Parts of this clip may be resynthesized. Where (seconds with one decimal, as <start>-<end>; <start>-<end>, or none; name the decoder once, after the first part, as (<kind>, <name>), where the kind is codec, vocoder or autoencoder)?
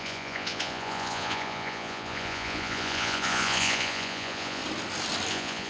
0.0-4.6 (vocoder, Vocos); 5.3-5.7